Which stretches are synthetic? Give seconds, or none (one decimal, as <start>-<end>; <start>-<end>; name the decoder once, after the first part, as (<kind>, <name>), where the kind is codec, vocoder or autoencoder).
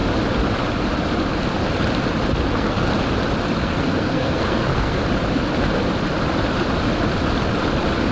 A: 2.5-2.9 (codec, SNAC); 3.5-5.0